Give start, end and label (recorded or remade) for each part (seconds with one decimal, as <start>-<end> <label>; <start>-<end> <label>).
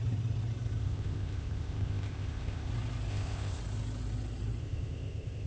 0.0-0.8 recorded; 0.8-2.7 remade; 2.7-3.1 recorded; 3.1-3.6 remade; 3.6-4.6 recorded; 4.6-5.5 remade